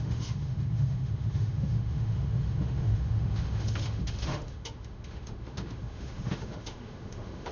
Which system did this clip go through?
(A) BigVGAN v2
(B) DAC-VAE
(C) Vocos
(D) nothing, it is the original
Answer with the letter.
B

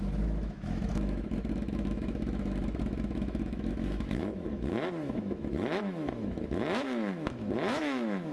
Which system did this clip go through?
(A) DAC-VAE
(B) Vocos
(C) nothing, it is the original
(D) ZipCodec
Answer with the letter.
A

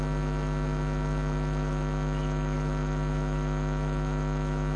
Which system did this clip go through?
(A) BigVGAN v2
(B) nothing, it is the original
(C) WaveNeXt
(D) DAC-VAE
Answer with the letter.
D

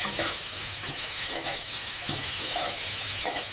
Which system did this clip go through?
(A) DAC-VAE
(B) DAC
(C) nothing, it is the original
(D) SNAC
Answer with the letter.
A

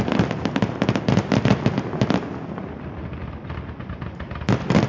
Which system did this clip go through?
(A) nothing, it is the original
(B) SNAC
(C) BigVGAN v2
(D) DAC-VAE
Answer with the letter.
A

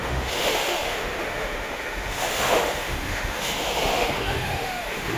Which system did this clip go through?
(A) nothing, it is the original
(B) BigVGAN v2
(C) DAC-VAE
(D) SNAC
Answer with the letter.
C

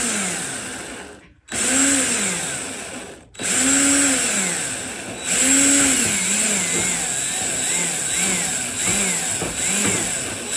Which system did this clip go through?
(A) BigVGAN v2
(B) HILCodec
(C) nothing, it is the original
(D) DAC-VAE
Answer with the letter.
C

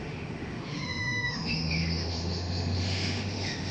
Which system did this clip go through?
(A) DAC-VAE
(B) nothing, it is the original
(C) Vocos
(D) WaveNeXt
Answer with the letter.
A